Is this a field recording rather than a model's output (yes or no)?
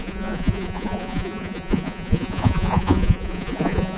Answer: no